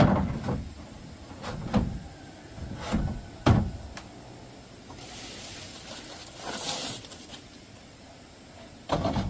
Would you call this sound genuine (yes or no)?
yes